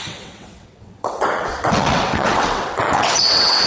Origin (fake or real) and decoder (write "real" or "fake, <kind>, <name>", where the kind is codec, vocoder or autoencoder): fake, vocoder, WaveNeXt